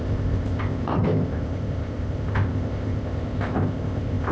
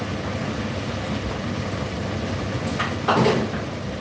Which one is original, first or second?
second